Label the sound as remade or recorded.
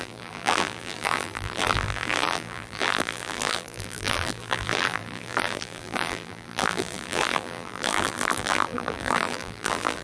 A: remade